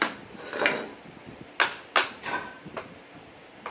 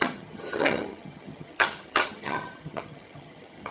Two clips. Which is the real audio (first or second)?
first